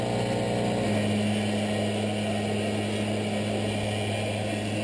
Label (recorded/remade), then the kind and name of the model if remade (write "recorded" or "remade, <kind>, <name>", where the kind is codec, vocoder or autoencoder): recorded